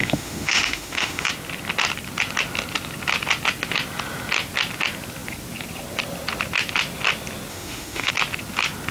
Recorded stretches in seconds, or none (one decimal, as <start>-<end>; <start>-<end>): 1.3-7.5; 8.1-8.9